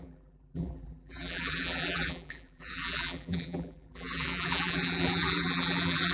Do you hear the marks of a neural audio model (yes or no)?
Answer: yes